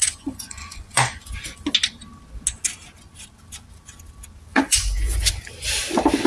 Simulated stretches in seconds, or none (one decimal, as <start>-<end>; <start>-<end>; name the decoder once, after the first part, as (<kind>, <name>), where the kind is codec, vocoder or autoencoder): 0.0-1.3 (vocoder, Vocos); 4.5-5.3